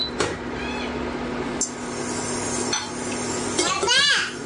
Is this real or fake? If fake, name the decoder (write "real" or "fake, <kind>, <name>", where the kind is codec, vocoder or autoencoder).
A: real